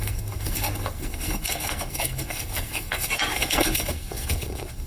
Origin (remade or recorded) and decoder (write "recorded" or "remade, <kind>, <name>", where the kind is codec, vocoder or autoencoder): remade, codec, SNAC